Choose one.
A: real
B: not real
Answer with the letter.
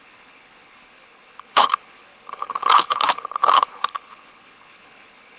B